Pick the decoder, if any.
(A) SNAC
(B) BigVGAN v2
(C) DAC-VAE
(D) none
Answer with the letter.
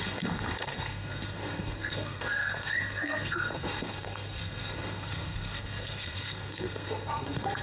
A